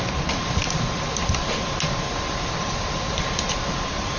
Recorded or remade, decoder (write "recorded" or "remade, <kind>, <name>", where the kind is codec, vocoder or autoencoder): recorded